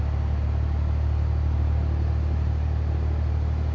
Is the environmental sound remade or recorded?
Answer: recorded